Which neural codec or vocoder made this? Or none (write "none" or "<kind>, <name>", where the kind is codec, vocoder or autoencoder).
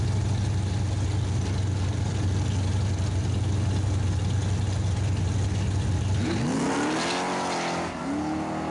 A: none